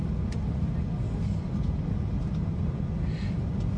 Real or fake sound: real